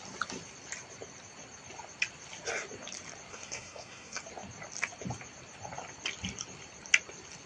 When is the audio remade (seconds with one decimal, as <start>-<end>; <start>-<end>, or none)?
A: 3.3-4.2